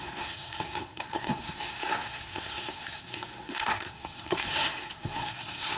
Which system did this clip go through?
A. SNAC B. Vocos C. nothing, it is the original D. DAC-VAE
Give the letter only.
A